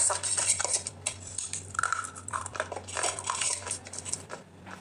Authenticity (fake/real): fake